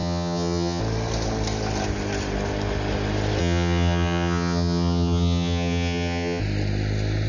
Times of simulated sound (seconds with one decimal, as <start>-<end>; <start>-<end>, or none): 0.0-0.8; 3.4-6.4